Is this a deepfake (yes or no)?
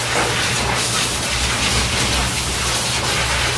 no